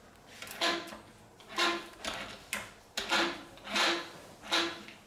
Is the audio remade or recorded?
recorded